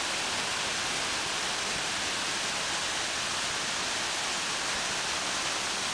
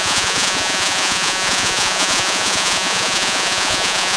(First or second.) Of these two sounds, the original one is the first